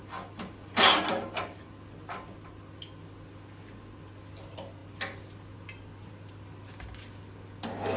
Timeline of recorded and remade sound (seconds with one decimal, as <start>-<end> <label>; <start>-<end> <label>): 0.0-8.0 recorded